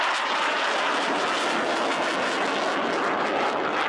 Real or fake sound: real